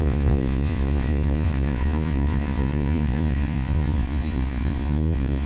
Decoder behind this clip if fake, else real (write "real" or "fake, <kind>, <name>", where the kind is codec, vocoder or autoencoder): fake, vocoder, Vocos